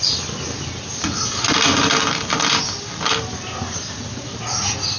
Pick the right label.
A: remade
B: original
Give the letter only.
B